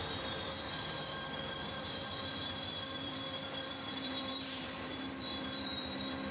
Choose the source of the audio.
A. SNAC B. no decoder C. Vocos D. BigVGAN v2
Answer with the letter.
D